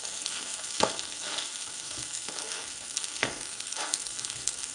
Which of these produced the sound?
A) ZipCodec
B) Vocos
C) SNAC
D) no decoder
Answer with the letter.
C